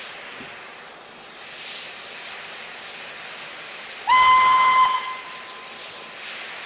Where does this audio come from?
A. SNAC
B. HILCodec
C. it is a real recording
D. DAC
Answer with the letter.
C